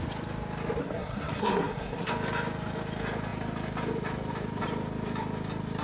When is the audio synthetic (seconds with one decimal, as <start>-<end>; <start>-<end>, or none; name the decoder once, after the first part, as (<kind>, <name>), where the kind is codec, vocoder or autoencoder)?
0.8-2.1 (codec, SNAC)